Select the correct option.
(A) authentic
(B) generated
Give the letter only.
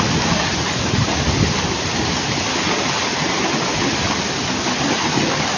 A